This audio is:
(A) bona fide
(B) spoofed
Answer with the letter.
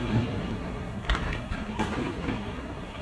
B